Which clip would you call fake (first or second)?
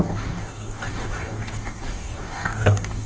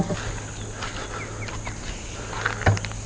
first